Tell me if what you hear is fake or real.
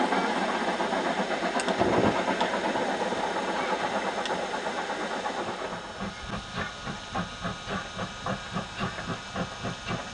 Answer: real